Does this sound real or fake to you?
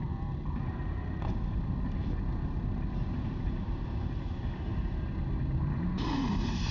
real